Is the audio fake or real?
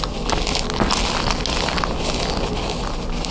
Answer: real